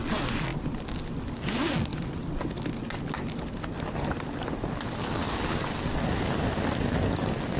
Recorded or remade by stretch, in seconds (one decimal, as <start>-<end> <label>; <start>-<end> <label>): 0.0-7.6 recorded